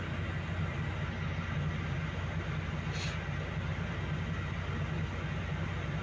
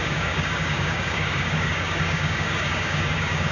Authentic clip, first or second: first